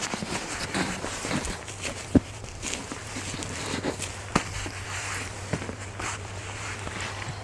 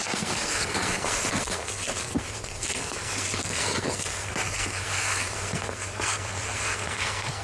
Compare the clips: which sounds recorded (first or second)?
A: first